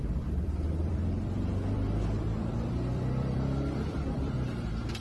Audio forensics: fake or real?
fake